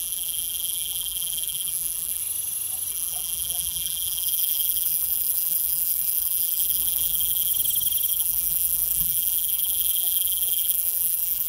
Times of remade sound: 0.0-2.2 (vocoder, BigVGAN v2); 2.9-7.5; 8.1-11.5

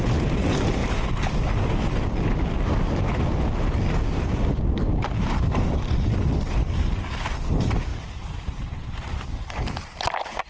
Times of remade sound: 0.0-0.8 (vocoder, BigVGAN v2); 5.3-7.9; 10.1-10.5

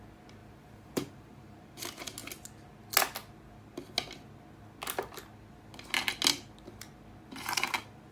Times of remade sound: 0.4-1.8 (vocoder, BigVGAN v2)

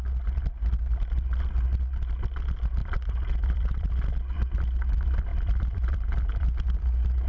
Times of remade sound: 2.8-4.1 (vocoder, BigVGAN v2); 5.3-6.8

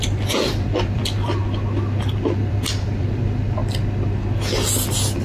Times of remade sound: 0.0-1.4 (vocoder, BigVGAN v2); 2.5-3.6

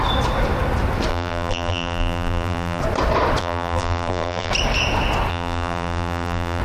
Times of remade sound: 1.1-2.8 (vocoder, BigVGAN v2); 3.4-4.5; 5.3-6.6